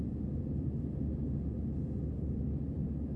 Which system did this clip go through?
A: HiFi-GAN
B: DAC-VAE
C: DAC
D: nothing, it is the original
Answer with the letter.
D